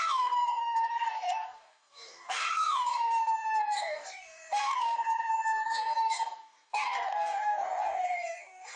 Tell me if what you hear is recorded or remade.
remade